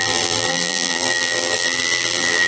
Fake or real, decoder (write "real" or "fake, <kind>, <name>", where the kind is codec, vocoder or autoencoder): fake, vocoder, BigVGAN v2